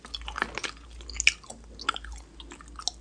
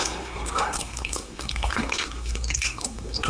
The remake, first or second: second